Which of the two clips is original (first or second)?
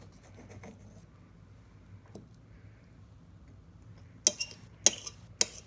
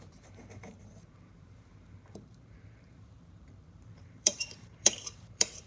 first